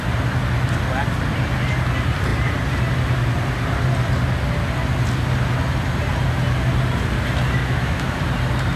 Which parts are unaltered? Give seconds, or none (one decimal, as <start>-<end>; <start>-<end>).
0.0-7.6; 8.2-8.8